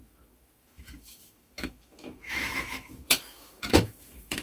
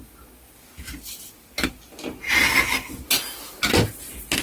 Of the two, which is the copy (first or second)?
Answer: first